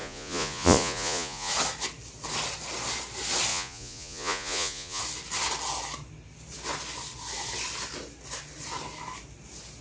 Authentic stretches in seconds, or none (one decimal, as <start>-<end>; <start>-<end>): 1.5-3.5; 5.0-9.8